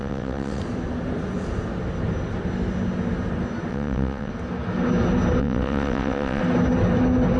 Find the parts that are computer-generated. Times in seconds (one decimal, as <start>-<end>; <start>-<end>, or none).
0.0-0.6; 3.7-4.3; 5.4-6.4